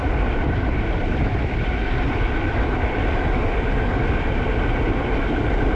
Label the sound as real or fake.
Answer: real